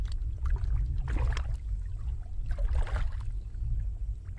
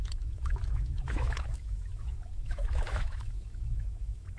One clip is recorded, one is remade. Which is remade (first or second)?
second